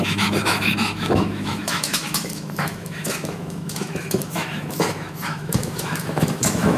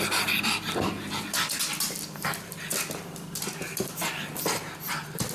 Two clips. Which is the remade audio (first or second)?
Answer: first